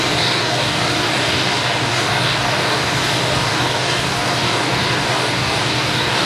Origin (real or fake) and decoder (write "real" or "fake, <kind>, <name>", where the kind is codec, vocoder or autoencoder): fake, codec, DAC